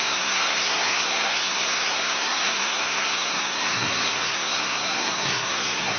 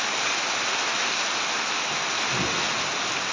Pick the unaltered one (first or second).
second